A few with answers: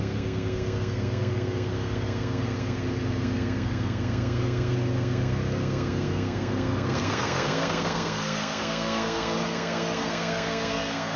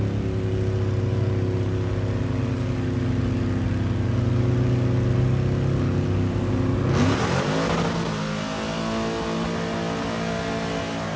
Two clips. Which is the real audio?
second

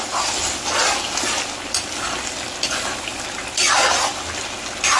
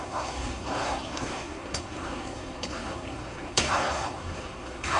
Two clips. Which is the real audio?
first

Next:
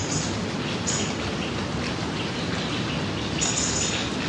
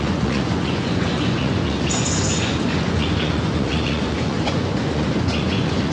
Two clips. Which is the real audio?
first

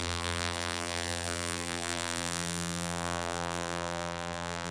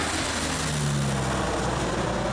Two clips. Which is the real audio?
second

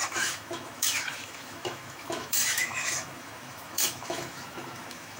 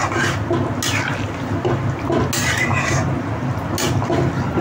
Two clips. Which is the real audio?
second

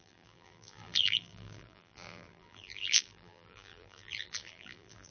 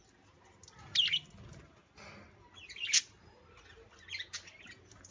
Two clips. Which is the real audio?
second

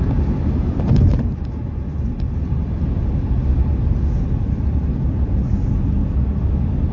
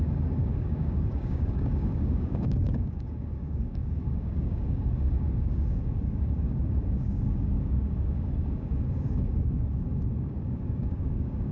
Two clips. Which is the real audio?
first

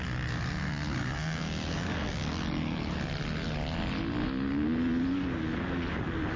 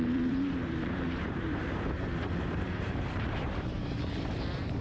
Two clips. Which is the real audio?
first